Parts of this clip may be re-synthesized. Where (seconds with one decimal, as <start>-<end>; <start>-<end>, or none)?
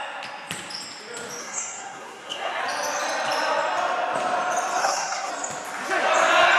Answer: 1.4-2.6; 4.8-5.3